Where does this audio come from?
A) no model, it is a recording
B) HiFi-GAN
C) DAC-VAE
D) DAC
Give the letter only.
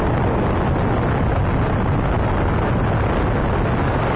A